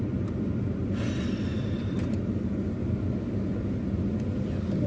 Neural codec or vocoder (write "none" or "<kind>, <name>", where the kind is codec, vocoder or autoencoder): none